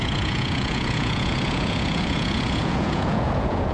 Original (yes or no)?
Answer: no